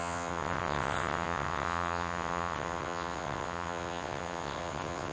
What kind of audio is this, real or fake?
fake